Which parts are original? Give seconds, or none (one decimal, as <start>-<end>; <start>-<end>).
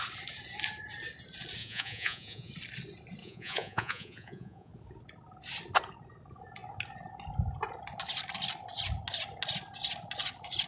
0.0-1.6; 2.5-3.2; 4.7-10.7